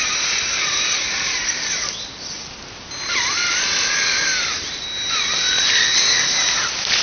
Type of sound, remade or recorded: recorded